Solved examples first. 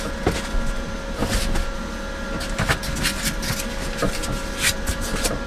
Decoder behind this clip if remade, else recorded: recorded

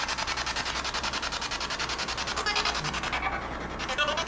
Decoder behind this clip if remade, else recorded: recorded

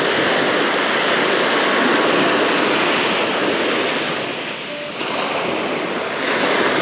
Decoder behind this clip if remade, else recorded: recorded